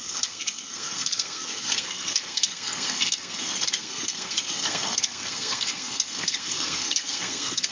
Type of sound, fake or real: fake